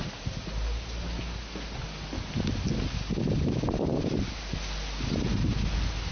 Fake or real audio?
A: real